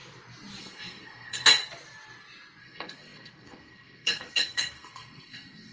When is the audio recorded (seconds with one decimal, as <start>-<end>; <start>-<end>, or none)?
0.0-0.6; 1.6-2.6